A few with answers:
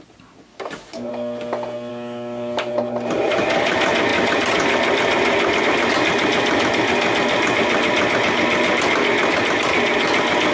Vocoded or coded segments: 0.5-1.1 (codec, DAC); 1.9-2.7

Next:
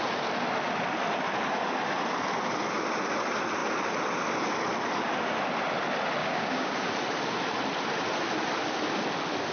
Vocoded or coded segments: 6.2-6.7 (codec, DAC)